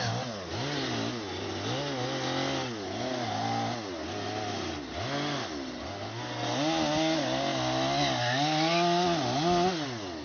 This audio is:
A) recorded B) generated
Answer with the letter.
A